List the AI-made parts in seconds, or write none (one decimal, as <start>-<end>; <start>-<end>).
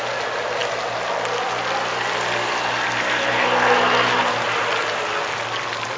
none